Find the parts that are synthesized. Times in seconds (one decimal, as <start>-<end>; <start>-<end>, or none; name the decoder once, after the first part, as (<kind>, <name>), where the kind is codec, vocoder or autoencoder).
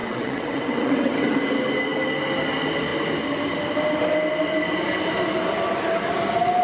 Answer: 0.0-1.4 (vocoder, WaveNeXt)